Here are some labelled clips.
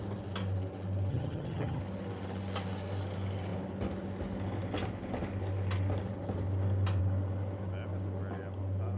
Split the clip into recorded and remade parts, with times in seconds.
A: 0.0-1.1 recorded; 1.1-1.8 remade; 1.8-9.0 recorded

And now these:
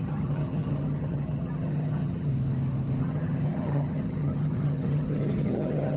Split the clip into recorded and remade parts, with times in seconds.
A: 0.0-2.3 remade; 2.3-3.0 recorded; 3.0-6.0 remade